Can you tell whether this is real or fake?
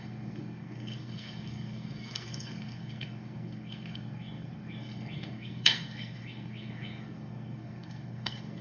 fake